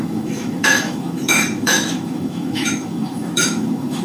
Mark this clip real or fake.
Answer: fake